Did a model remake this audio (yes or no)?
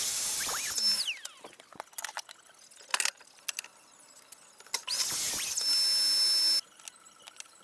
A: no